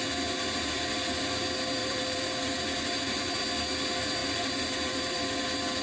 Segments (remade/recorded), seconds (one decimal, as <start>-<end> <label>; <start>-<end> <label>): 0.0-1.8 recorded; 1.8-3.3 remade; 3.3-4.2 recorded; 4.2-5.2 remade; 5.2-5.8 recorded